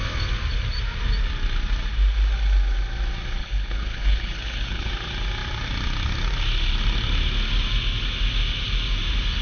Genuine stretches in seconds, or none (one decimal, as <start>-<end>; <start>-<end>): 0.0-3.4; 4.9-9.4